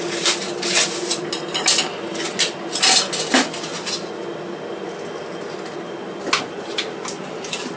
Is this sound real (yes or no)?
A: yes